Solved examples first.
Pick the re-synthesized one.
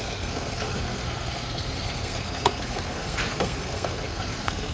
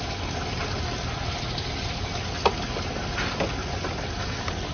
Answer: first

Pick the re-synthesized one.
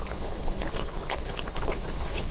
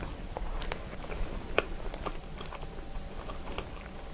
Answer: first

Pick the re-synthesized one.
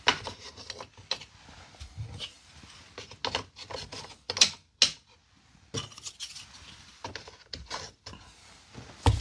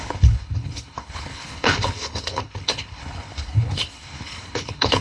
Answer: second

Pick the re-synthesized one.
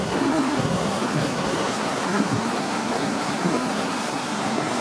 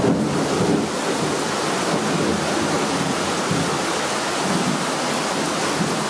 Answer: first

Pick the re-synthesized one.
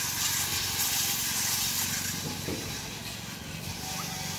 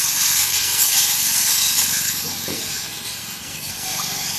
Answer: second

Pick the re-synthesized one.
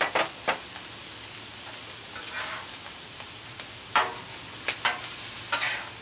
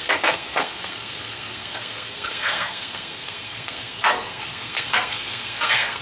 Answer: second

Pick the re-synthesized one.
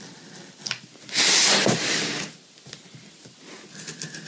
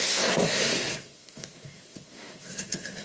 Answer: second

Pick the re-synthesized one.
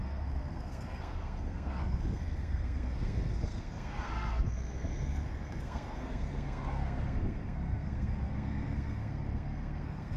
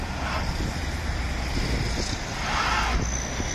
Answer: first